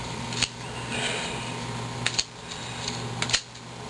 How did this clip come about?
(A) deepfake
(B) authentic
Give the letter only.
B